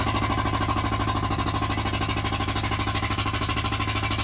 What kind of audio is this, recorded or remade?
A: recorded